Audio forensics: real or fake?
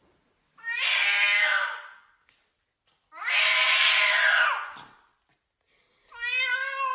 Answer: real